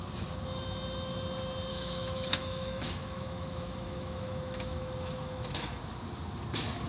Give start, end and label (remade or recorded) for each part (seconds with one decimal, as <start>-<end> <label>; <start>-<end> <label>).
0.0-1.7 recorded; 1.7-5.8 remade; 5.8-6.9 recorded